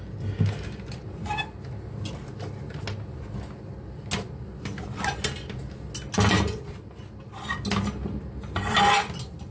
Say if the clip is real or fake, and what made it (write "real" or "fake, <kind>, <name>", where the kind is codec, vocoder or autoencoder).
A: real